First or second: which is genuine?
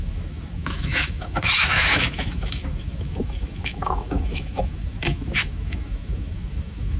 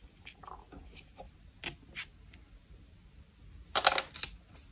second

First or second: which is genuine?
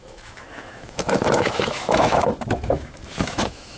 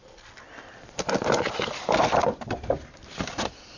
second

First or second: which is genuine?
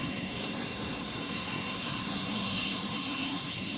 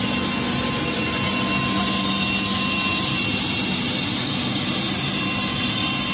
second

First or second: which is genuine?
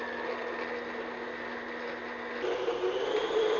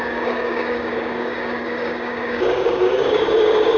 first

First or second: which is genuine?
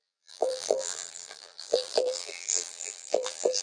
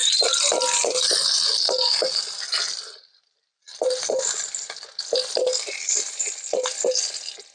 second